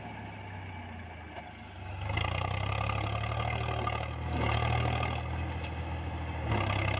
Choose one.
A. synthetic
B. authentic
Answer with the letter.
B